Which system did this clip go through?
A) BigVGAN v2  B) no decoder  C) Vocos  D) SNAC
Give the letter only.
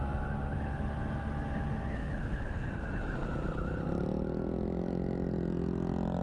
B